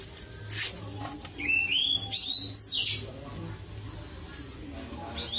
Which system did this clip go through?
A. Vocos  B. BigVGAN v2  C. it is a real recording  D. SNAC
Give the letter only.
C